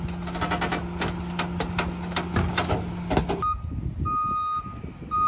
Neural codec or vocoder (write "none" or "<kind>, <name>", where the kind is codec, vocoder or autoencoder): none